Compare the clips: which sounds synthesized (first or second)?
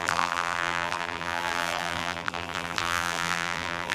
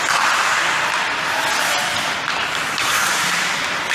first